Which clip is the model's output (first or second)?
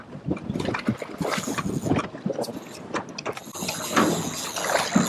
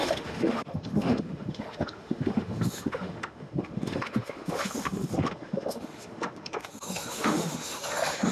second